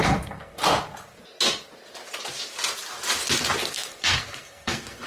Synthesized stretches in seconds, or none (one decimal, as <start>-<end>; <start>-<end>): 0.0-0.6; 3.7-5.1